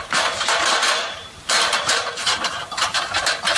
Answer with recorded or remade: remade